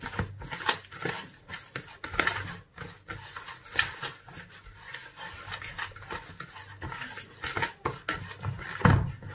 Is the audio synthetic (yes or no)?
no